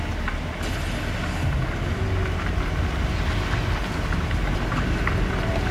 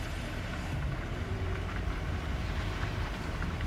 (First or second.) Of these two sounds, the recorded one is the first